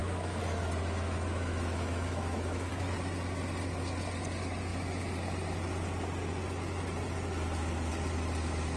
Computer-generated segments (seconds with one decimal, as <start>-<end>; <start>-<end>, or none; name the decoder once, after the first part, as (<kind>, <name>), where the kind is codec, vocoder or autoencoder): 0.0-2.7 (autoencoder, DAC-VAE)